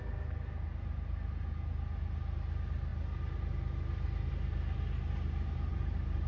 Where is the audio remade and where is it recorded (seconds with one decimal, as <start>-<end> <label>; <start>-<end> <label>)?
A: 0.0-5.7 recorded; 5.7-6.3 remade